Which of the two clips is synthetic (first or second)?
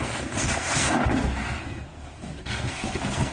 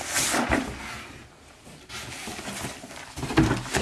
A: first